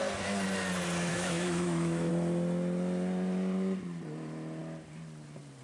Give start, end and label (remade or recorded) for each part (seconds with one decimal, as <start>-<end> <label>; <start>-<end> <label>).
0.0-1.1 recorded; 1.1-2.1 remade; 2.1-5.6 recorded